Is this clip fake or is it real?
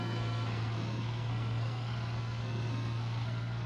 fake